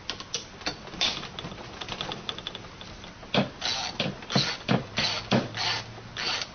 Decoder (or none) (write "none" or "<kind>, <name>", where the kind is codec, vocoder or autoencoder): none